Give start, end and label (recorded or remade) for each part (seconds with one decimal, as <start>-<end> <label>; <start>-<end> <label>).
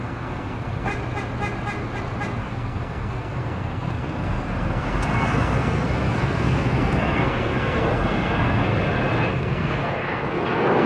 0.0-0.9 remade; 0.9-2.4 recorded; 2.4-8.7 remade; 8.7-9.3 recorded; 9.3-10.9 remade